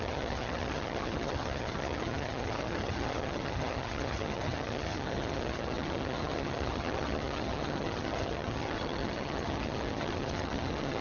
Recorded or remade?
remade